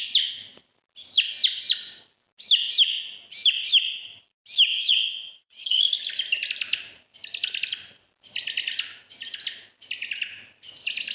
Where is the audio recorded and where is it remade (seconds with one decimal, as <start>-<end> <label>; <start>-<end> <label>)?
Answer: 0.0-4.7 recorded; 4.7-5.8 remade; 5.8-11.1 recorded